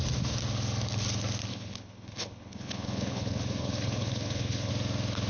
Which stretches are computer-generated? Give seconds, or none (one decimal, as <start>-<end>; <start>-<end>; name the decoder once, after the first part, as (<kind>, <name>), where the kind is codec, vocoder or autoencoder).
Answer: 1.5-4.7 (codec, HILCodec)